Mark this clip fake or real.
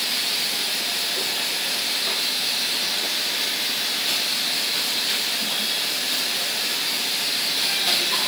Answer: real